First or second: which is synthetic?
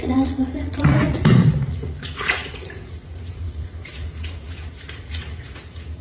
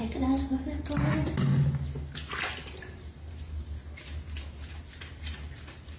first